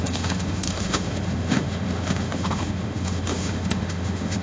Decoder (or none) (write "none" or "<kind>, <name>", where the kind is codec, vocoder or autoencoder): autoencoder, DAC-VAE